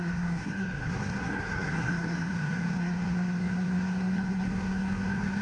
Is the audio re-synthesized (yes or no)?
yes